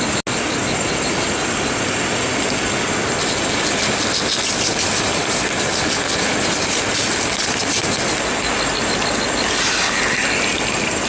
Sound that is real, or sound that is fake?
real